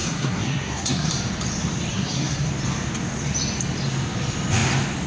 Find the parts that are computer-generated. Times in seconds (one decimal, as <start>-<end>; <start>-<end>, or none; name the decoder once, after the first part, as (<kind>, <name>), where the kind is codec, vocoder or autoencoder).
0.0-1.1 (codec, SNAC); 1.9-2.5